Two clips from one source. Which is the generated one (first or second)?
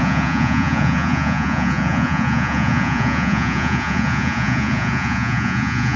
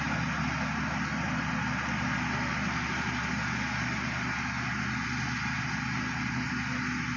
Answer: first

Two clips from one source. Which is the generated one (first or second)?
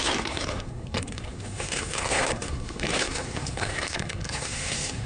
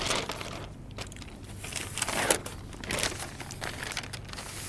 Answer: first